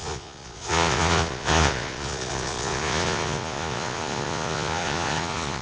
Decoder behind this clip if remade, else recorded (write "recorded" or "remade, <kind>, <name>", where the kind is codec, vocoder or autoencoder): remade, vocoder, Vocos